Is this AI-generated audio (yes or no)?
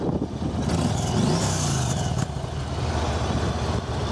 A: no